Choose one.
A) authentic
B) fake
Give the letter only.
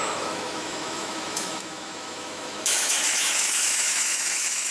B